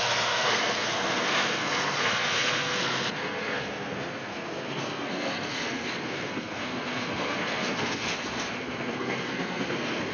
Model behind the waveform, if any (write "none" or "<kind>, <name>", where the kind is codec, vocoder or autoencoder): codec, SNAC